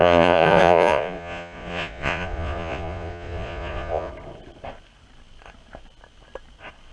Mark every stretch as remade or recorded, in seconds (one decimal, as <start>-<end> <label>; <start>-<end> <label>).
0.0-4.1 remade; 4.1-6.9 recorded